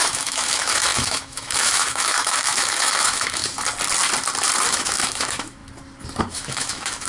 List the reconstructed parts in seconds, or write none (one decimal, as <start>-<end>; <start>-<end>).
0.0-3.4; 4.7-5.6; 6.2-7.1